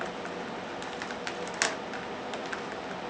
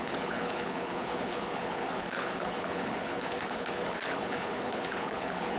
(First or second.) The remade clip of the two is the second